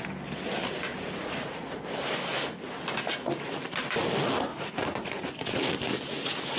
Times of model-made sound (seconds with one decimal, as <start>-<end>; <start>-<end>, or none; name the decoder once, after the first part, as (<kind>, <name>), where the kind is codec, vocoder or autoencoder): 0.9-1.8 (vocoder, Vocos); 4.5-5.6